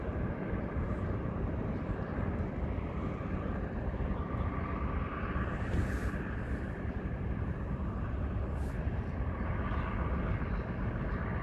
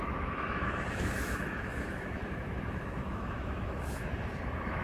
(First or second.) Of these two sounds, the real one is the first